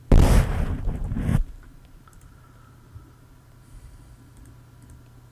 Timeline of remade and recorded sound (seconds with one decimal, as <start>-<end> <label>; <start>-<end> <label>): 0.0-1.3 recorded; 1.3-4.5 remade; 4.5-5.3 recorded